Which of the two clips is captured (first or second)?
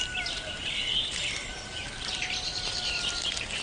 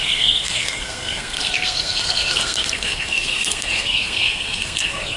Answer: first